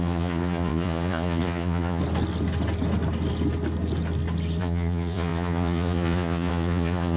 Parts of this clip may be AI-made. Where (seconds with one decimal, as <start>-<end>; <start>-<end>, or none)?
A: 0.0-2.0; 4.6-7.2